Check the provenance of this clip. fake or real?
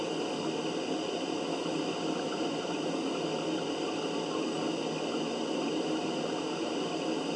real